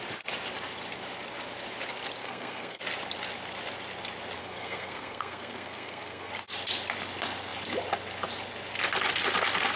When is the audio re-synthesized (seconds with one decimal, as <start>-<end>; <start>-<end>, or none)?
2.2-2.8; 4.4-6.3